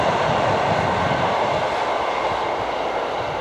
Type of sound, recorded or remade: recorded